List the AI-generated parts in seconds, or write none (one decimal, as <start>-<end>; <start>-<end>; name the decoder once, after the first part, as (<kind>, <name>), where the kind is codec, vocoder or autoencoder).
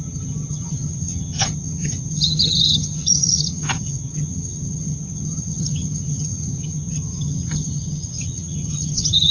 0.0-9.3 (vocoder, HiFi-GAN)